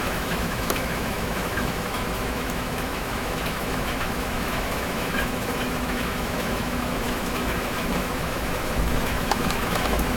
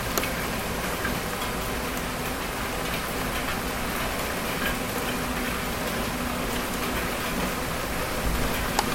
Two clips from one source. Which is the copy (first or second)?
first